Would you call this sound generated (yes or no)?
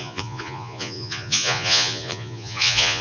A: yes